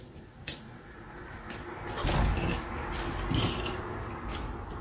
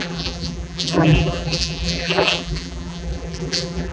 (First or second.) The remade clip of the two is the second